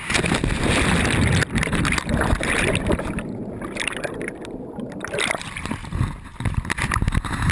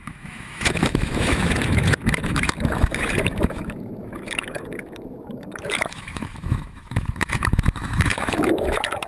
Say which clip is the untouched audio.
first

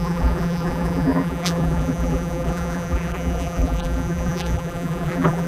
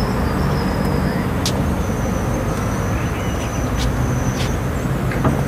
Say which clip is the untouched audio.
second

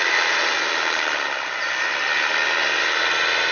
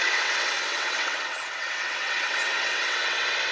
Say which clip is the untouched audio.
first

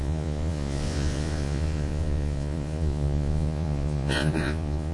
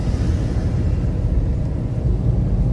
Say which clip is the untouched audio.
second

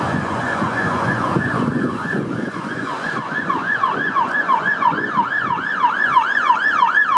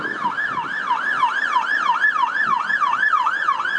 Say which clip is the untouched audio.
second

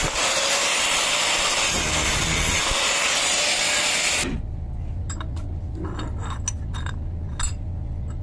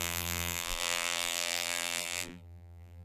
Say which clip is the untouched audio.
first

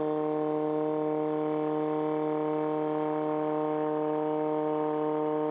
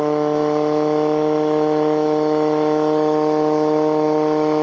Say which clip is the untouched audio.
first